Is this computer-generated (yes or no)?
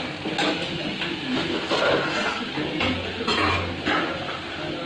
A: no